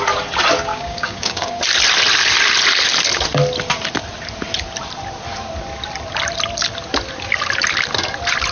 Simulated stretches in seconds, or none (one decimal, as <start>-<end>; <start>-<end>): 0.7-1.6